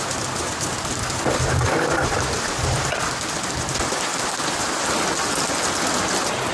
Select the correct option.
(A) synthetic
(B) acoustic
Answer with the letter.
B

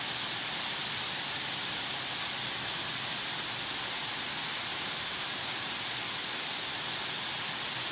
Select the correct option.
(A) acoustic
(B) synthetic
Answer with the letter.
A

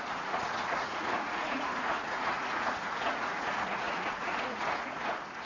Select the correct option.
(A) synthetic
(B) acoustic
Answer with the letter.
A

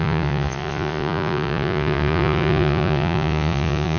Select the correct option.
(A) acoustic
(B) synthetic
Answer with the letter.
B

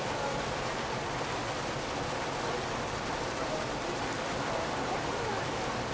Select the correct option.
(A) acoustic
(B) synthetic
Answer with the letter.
A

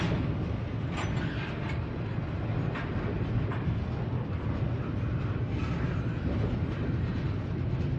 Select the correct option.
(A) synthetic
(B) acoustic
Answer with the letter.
B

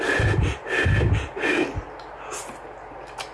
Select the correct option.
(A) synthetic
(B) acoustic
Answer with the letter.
B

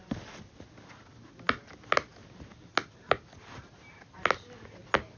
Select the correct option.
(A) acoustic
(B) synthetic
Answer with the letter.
A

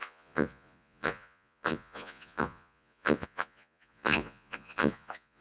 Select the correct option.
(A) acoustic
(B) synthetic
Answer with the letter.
B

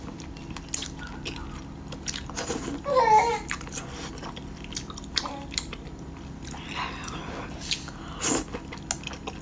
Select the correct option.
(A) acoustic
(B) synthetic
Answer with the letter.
A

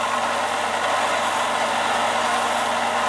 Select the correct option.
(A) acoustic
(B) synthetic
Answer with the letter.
A